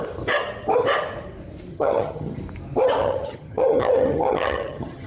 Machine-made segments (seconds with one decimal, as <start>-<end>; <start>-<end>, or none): 1.7-2.4; 3.0-5.1